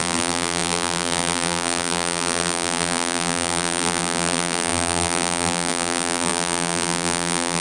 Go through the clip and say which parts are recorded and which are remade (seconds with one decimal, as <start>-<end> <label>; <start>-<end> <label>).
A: 0.0-7.6 remade